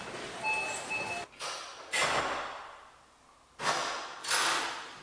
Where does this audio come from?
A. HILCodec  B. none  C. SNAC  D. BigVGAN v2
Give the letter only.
B